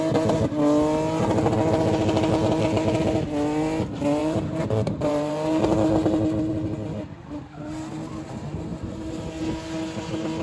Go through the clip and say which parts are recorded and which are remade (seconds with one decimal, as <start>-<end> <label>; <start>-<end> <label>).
0.0-4.2 recorded; 4.2-5.6 remade; 5.6-10.4 recorded